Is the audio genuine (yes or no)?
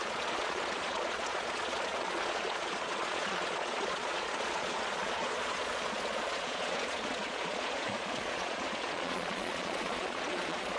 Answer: no